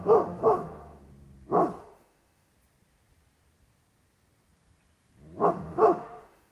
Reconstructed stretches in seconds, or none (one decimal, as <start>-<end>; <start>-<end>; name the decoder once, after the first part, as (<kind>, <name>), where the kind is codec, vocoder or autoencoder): 0.0-1.1 (autoencoder, DAC-VAE); 1.8-2.5; 5.5-6.5